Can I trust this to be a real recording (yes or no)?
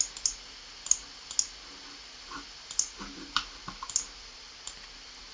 yes